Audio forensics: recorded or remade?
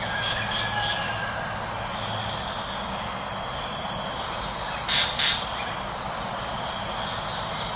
recorded